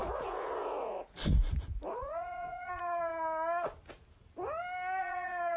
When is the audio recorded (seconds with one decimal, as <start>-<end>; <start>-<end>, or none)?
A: 3.1-5.0